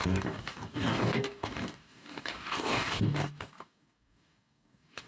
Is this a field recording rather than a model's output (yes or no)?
no